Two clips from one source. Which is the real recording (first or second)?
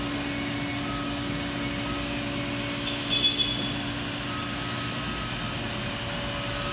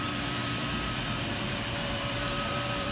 first